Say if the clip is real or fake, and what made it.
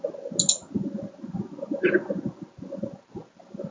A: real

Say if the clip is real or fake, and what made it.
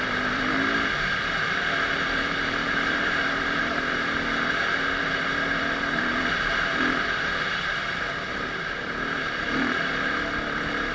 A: fake, vocoder, BigVGAN v2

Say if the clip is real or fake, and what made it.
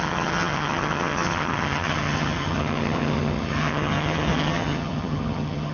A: fake, vocoder, HiFi-GAN